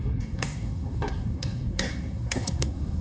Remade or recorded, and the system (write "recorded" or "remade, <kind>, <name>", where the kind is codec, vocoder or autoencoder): remade, codec, SNAC